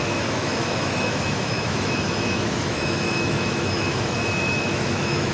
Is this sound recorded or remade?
remade